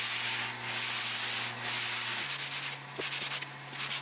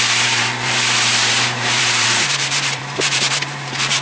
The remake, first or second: second